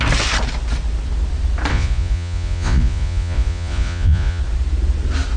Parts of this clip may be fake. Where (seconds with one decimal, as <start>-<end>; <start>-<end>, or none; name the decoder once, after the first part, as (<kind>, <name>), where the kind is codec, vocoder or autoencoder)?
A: 1.7-4.4 (vocoder, Vocos)